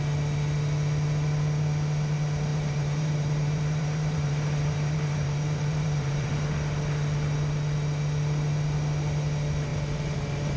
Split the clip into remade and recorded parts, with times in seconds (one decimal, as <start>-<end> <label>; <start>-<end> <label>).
0.0-2.5 recorded; 2.5-6.3 remade; 6.3-10.6 recorded